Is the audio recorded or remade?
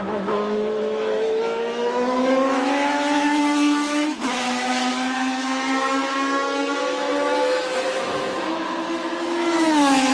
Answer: remade